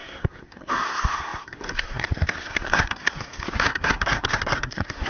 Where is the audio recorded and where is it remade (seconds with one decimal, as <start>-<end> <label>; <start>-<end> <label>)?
0.0-5.1 remade